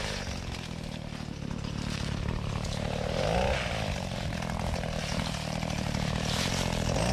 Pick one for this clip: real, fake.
real